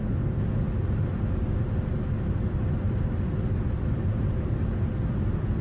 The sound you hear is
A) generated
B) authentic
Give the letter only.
B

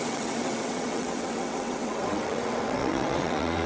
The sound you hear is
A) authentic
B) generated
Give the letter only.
B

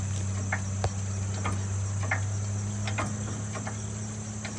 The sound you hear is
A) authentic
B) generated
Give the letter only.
A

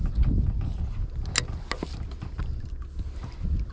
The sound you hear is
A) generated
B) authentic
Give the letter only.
B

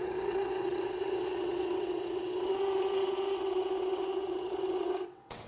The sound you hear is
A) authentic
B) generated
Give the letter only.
B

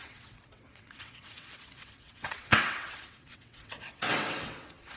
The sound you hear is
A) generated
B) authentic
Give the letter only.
A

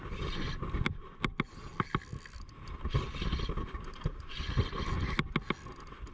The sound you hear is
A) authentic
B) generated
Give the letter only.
A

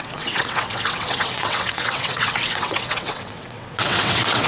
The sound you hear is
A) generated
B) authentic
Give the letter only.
A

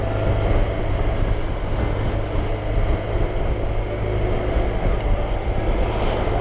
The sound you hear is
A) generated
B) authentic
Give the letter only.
B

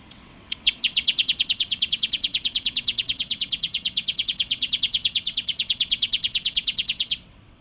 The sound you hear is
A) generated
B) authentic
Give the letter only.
A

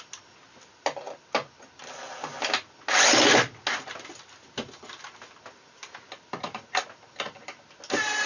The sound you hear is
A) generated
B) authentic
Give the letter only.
B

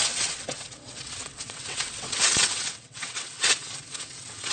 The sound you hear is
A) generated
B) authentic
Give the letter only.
A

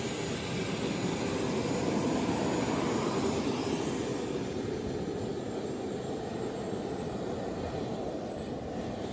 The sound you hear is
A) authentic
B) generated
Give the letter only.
A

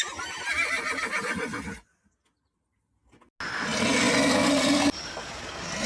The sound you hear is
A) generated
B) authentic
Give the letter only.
B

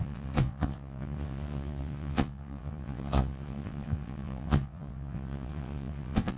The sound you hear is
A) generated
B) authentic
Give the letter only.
A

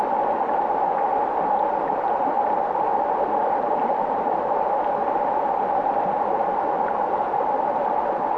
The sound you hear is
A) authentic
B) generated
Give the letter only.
A